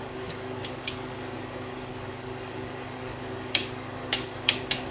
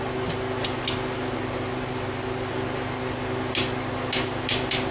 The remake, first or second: first